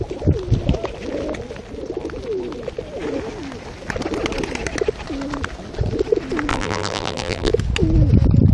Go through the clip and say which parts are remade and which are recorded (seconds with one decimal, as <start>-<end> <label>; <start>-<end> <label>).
0.0-6.5 recorded; 6.5-7.5 remade; 7.5-8.5 recorded